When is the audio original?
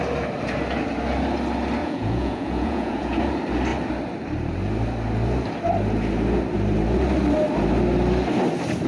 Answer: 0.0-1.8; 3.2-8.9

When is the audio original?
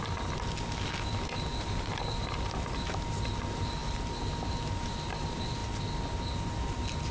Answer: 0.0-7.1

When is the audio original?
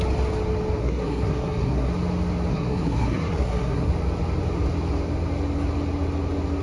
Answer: 0.0-0.8; 1.9-2.5; 3.9-6.6